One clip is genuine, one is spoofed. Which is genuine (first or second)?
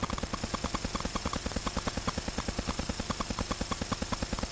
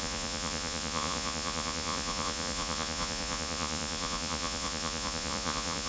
first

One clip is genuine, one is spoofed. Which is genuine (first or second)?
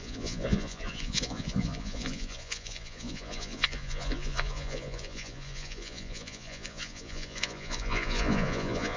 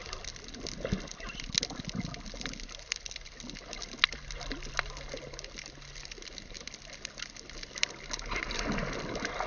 second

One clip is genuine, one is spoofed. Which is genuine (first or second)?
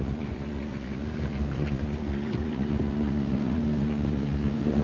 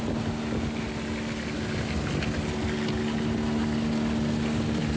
second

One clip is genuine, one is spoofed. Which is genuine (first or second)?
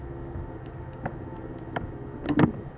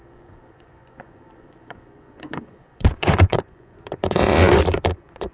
first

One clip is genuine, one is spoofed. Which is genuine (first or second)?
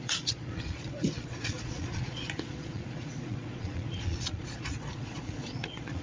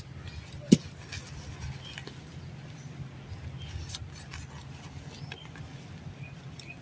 second